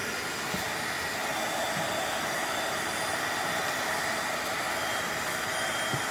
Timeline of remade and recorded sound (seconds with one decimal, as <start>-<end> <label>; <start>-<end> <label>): 0.0-0.7 remade; 0.7-6.1 recorded